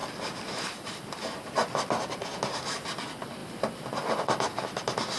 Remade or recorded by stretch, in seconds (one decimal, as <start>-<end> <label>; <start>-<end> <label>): 0.0-5.2 recorded